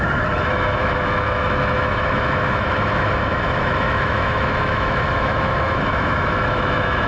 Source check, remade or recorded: remade